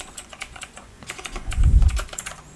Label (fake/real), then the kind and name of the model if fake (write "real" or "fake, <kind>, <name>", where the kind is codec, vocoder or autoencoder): fake, vocoder, Vocos